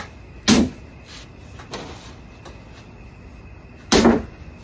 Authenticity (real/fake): real